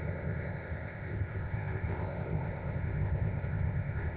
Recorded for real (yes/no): no